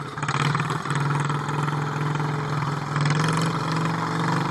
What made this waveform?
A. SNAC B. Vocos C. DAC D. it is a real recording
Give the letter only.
D